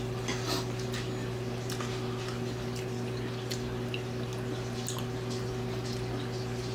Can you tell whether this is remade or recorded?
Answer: recorded